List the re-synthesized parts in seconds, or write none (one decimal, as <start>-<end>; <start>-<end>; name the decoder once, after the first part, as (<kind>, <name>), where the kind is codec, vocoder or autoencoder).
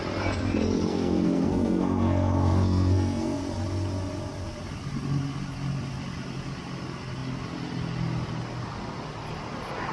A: 0.9-3.4 (codec, SNAC)